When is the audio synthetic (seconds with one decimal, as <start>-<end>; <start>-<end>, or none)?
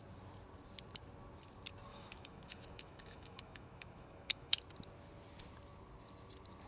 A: 1.9-4.6